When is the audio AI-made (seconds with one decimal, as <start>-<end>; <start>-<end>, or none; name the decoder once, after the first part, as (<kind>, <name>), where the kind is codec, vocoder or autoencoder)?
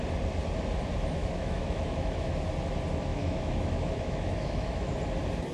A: 1.2-2.3 (autoencoder, DAC-VAE); 3.1-4.9